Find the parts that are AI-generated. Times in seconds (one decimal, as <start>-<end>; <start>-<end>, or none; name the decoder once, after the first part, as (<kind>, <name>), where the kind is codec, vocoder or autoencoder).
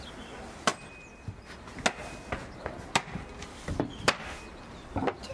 0.7-1.5 (vocoder, BigVGAN v2)